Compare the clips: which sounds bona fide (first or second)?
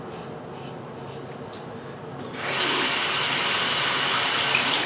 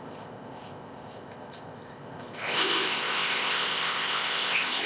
first